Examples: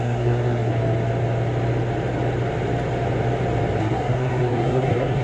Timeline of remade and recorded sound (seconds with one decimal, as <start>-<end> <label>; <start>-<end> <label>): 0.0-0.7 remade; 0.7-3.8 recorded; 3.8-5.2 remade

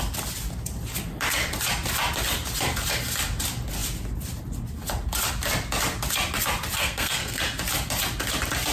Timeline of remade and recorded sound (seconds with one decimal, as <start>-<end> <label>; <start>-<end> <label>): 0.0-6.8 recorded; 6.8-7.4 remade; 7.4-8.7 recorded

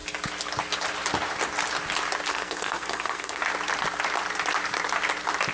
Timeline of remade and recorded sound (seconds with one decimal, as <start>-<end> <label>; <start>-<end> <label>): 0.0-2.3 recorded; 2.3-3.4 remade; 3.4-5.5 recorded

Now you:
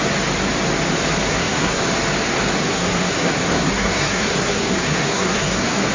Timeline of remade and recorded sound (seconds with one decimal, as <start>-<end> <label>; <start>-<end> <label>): 0.0-1.3 recorded; 1.3-1.8 remade; 1.8-2.7 recorded; 2.7-5.9 remade

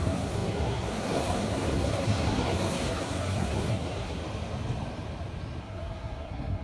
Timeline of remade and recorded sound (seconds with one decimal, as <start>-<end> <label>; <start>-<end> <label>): 0.0-4.2 remade; 4.2-5.6 recorded; 5.6-6.6 remade

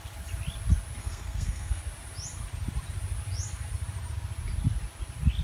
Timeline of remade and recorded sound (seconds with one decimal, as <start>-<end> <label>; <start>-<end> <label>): 0.0-1.0 recorded; 1.0-1.8 remade; 1.8-5.4 recorded

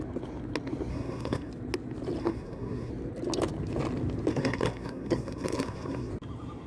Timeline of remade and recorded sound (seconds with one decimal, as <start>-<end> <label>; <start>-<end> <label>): 0.0-0.9 recorded; 0.9-1.5 remade; 1.5-2.2 recorded; 2.2-2.9 remade; 2.9-4.3 recorded; 4.3-6.1 remade; 6.1-6.7 recorded